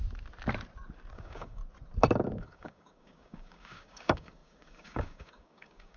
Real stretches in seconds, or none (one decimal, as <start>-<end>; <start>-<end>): 0.0-1.1; 1.6-2.4